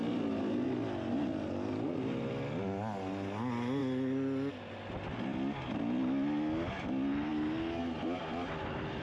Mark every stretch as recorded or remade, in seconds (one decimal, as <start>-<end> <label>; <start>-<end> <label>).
0.0-9.0 recorded